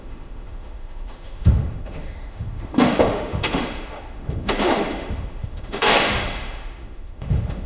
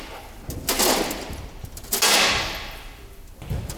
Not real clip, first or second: first